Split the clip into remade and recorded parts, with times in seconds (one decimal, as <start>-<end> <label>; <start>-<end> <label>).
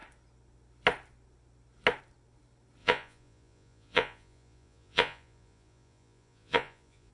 0.0-2.8 recorded; 2.8-7.1 remade